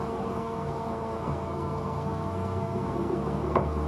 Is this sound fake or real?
fake